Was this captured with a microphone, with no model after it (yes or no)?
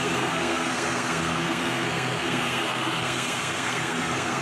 no